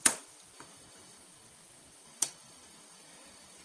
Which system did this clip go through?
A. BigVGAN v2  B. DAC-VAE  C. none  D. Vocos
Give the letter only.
A